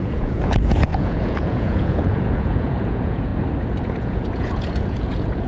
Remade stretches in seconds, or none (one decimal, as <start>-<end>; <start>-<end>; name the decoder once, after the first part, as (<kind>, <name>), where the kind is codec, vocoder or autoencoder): 0.0-3.3 (vocoder, Vocos); 3.8-5.5